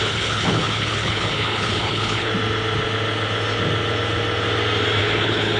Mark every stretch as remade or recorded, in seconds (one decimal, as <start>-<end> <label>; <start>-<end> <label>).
0.0-2.3 remade; 2.3-5.0 recorded; 5.0-5.6 remade